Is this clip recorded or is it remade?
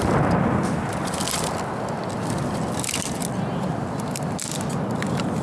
recorded